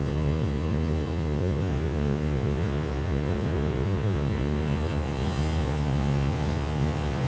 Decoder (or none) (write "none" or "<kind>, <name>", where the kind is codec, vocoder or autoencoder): vocoder, Vocos